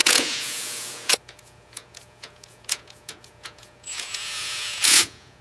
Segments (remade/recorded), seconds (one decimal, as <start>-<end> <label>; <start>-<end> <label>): 0.0-5.4 remade